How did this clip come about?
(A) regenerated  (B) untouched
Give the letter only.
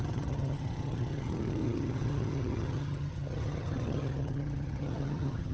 A